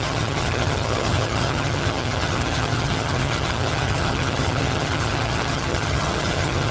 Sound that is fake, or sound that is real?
fake